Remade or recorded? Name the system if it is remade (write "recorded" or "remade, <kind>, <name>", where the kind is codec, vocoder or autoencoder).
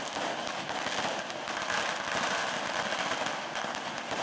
recorded